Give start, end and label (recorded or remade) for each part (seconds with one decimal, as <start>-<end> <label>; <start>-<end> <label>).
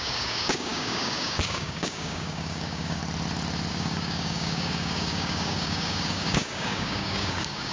0.0-3.0 remade; 3.0-3.7 recorded; 3.7-7.7 remade